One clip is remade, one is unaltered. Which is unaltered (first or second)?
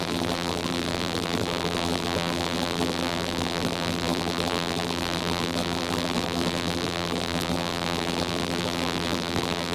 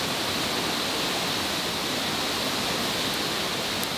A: second